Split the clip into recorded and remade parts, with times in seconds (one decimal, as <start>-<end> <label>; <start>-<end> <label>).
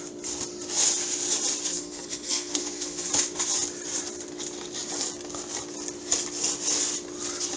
0.0-1.7 recorded; 1.7-3.1 remade; 3.1-7.6 recorded